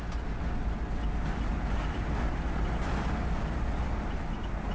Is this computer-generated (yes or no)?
no